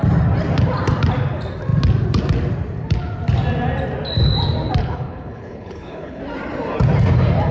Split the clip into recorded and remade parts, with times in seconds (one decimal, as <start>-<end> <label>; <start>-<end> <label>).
0.0-4.8 recorded; 4.8-6.2 remade; 6.2-7.5 recorded